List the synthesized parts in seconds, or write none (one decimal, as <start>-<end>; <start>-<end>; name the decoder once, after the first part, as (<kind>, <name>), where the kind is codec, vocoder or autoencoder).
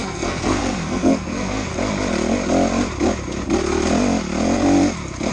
0.0-1.7 (codec, SNAC)